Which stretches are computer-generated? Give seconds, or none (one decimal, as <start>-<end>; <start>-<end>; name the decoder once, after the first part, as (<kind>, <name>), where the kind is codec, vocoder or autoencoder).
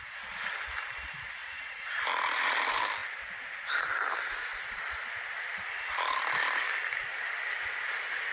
1.4-2.0 (vocoder, Vocos)